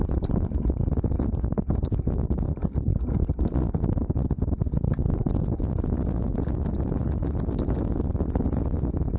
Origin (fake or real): real